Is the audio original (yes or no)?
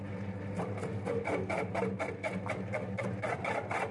yes